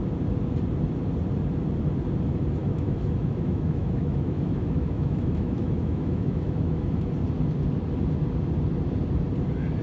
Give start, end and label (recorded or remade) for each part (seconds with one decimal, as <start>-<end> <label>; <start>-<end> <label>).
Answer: 0.0-2.6 recorded; 2.6-7.1 remade; 7.1-9.8 recorded